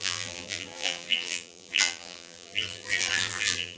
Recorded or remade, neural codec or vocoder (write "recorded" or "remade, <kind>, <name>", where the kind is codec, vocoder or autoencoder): remade, vocoder, BigVGAN v2